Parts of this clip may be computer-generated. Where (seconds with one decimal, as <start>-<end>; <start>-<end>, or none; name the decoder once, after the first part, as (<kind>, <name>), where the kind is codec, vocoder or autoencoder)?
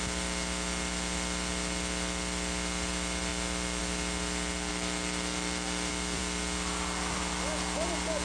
4.7-5.9 (vocoder, BigVGAN v2)